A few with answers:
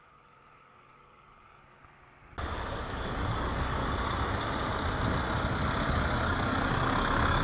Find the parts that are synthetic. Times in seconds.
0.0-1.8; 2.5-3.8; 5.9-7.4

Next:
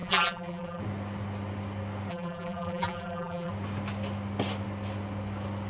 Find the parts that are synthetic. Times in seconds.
0.0-0.8; 2.1-3.5

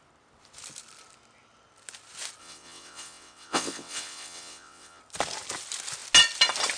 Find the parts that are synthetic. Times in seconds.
2.4-5.0

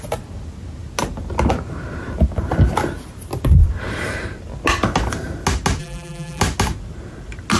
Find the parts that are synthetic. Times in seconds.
5.8-6.4

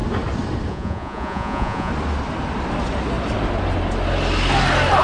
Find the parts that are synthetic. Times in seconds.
0.7-1.9